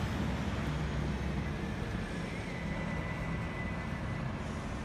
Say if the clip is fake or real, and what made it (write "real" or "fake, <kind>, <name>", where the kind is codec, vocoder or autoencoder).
real